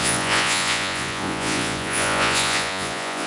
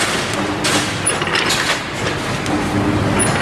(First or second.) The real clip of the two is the second